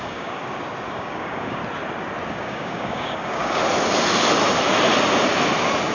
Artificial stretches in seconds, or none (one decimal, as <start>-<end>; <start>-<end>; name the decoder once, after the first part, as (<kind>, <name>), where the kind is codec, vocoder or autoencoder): 0.0-0.4 (codec, DAC); 0.9-1.6; 2.3-3.6